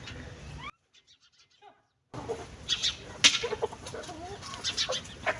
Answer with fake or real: real